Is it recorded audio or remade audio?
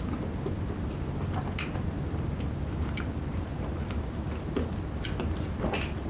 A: recorded